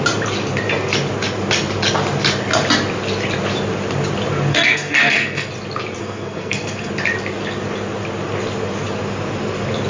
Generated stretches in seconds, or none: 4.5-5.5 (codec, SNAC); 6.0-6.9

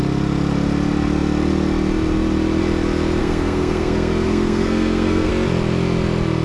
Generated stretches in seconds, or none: 3.2-5.3 (codec, SNAC)

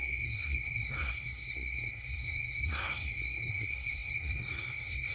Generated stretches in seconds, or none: 0.0-5.1 (codec, SNAC)